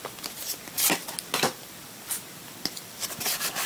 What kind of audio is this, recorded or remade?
remade